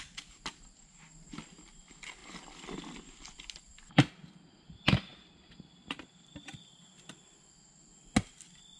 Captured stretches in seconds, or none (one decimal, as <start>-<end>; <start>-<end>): 0.0-8.8